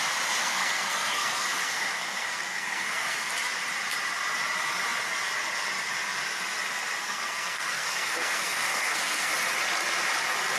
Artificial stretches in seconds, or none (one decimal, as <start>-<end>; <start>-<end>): 0.4-3.3; 7.0-9.3